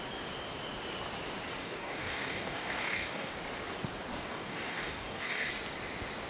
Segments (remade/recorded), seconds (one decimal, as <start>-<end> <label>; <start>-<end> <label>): 0.0-1.6 recorded; 1.6-3.3 remade; 3.3-4.1 recorded; 4.1-5.5 remade; 5.5-6.3 recorded